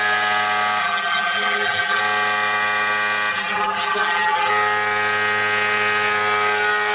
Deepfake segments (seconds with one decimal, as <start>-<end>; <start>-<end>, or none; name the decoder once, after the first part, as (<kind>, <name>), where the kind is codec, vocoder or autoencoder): 0.8-2.0 (vocoder, BigVGAN v2); 3.3-4.5